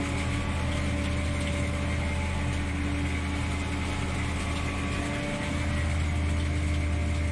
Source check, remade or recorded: recorded